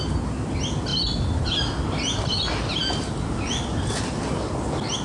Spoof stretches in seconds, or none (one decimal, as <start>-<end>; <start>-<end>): none